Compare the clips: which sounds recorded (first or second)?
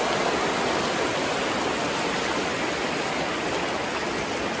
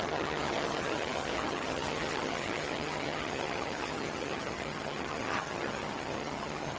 first